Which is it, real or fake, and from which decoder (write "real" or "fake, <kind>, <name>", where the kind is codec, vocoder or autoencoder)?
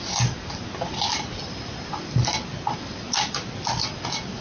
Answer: real